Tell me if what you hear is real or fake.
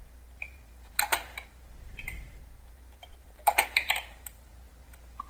fake